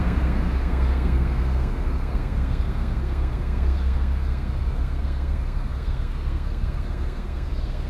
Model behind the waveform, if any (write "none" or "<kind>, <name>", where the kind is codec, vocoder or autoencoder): codec, SNAC